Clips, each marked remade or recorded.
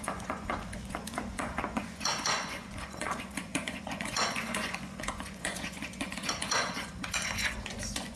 remade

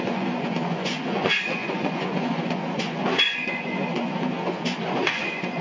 remade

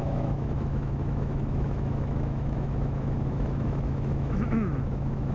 remade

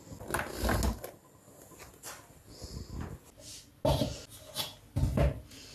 recorded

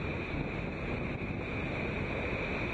recorded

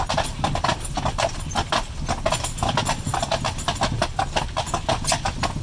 recorded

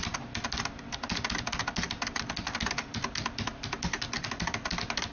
recorded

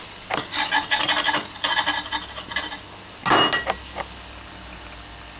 recorded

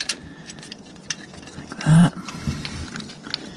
recorded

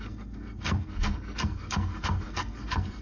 remade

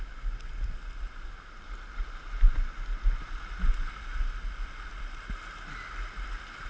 recorded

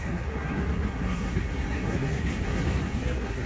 remade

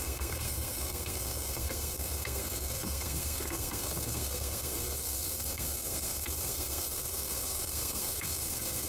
remade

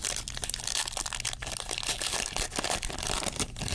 recorded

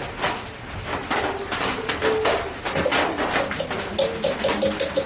recorded